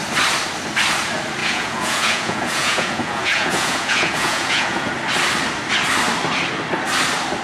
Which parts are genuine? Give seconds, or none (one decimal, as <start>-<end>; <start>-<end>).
0.0-1.4; 4.9-7.4